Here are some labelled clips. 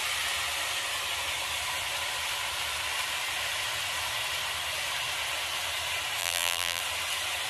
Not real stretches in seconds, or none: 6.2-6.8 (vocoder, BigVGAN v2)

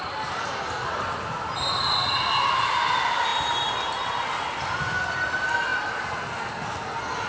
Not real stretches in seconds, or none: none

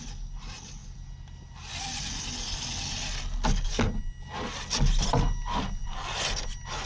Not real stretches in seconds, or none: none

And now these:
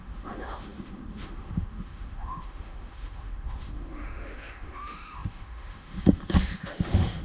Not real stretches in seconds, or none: 0.0-7.2 (autoencoder, DAC-VAE)

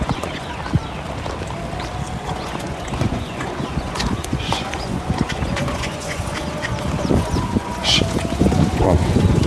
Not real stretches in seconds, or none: 0.0-0.6 (vocoder, Vocos); 2.2-9.5